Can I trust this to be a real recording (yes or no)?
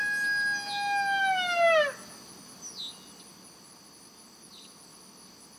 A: yes